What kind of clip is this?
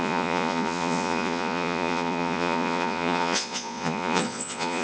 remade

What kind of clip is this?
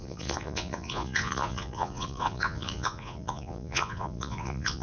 remade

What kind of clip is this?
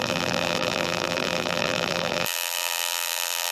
remade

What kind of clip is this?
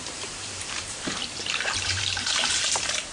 remade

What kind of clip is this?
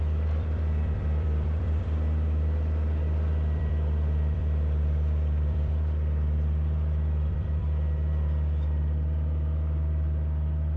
remade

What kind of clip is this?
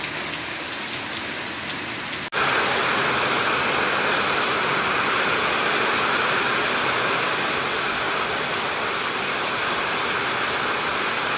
recorded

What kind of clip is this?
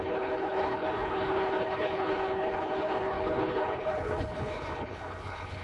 remade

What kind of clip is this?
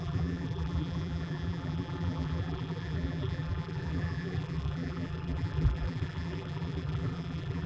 remade